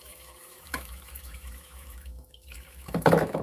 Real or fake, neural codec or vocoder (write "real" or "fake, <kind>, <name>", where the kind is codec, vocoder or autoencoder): fake, autoencoder, DAC-VAE